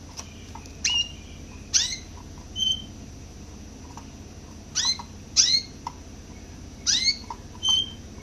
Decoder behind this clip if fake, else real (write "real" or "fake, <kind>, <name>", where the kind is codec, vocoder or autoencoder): real